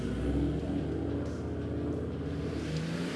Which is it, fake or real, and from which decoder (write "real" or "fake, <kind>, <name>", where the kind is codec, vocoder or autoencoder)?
real